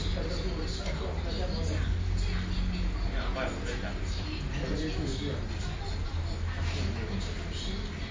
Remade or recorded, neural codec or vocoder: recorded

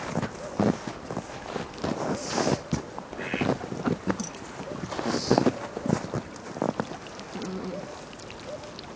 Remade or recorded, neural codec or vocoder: recorded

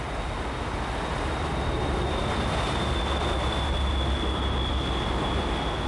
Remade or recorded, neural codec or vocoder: recorded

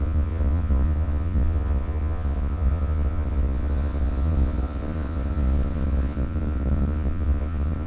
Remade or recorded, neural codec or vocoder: remade, vocoder, Vocos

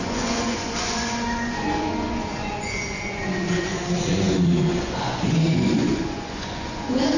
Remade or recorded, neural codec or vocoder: remade, vocoder, Vocos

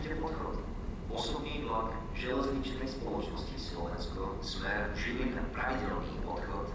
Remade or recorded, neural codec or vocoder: recorded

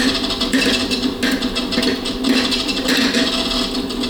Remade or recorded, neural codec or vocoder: recorded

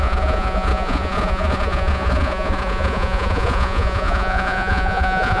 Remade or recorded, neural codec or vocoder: remade, vocoder, Vocos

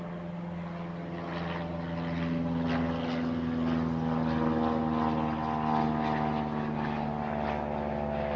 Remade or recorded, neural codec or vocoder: recorded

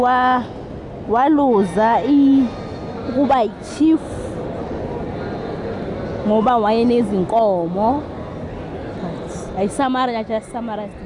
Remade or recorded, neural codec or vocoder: recorded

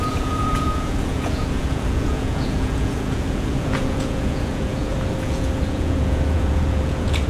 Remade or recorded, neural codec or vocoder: remade, vocoder, Vocos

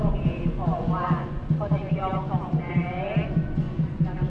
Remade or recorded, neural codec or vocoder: remade, vocoder, Vocos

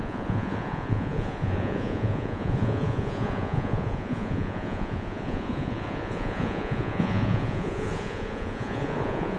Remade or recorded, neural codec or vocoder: remade, vocoder, Vocos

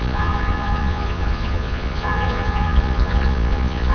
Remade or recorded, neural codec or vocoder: remade, vocoder, Vocos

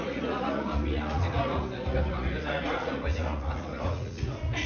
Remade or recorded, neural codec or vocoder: remade, vocoder, Vocos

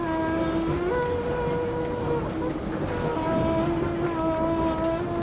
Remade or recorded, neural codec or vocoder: recorded